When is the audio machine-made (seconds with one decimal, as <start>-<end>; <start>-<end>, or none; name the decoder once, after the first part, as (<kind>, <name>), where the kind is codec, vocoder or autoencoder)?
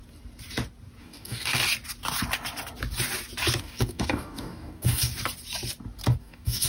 1.0-1.6 (codec, DAC); 3.6-5.1; 6.2-6.7